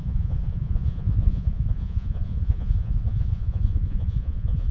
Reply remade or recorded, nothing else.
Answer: remade